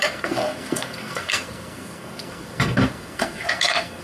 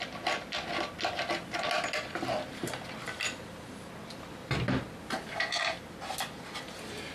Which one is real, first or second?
second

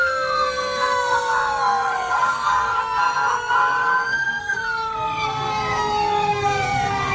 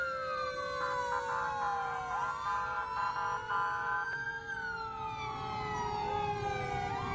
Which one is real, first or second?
second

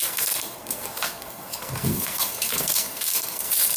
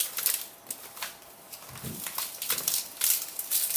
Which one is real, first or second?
second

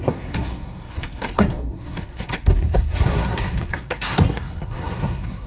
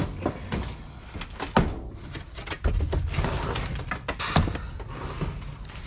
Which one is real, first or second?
second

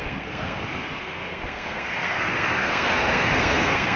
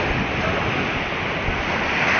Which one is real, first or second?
second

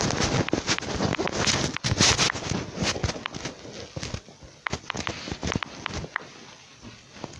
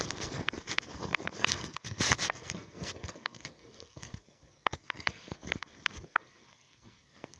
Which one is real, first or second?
first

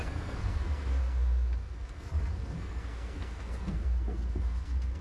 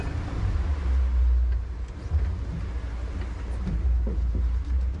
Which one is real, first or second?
second